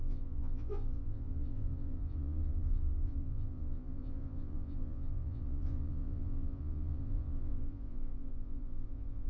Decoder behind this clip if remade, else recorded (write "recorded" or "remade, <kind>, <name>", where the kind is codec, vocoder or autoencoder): remade, vocoder, Vocos